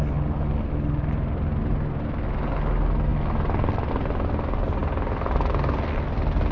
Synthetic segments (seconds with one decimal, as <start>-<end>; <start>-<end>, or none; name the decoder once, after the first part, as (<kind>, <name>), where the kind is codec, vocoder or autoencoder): none